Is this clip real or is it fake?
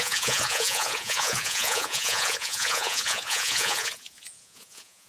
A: fake